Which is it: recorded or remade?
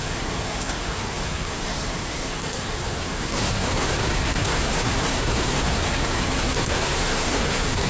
remade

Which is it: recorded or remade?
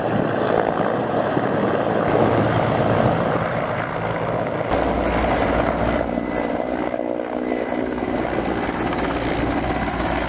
recorded